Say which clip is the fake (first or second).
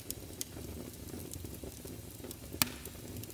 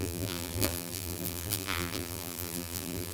second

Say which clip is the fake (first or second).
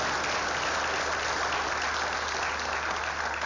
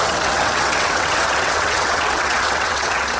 second